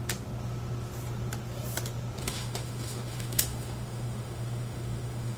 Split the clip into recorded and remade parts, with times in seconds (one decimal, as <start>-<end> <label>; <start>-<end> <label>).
0.0-2.2 recorded; 2.2-5.4 remade